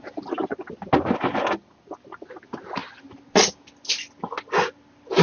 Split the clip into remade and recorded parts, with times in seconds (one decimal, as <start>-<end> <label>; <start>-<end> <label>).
0.0-5.2 recorded